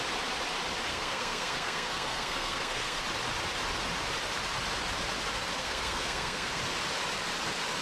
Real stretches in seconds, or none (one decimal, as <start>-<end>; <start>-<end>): 0.0-0.9; 3.0-5.6; 6.6-7.8